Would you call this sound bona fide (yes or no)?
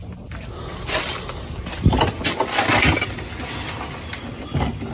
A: yes